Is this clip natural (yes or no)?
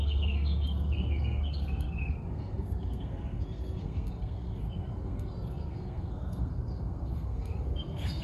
no